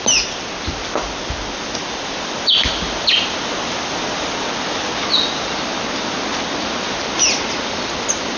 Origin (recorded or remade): recorded